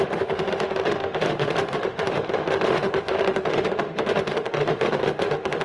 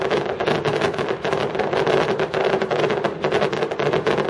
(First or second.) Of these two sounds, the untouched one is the second